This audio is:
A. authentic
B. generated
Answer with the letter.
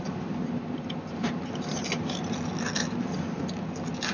A